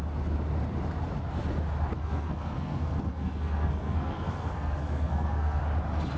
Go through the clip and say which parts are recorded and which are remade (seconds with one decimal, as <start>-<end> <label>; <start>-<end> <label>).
0.0-1.9 recorded; 1.9-5.6 remade; 5.6-6.2 recorded